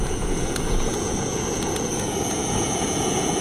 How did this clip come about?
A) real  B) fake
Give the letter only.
B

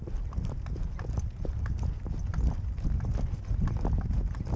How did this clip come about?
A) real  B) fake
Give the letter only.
A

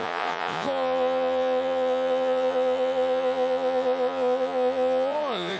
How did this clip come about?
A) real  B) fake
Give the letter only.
B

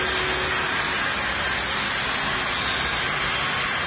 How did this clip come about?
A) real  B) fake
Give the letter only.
A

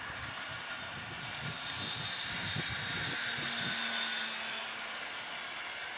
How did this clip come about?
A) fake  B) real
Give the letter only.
B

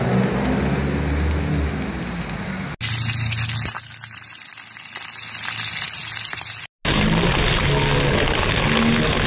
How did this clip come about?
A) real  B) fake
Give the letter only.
A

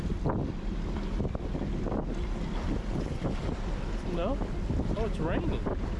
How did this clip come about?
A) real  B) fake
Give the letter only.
A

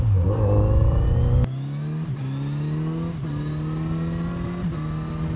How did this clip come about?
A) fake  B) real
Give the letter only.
B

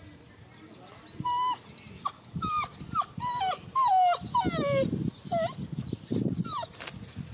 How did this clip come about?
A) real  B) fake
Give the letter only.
A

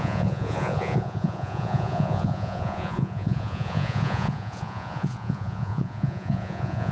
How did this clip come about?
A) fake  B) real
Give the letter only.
A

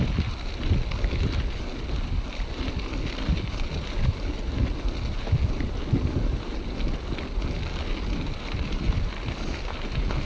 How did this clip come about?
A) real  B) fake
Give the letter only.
A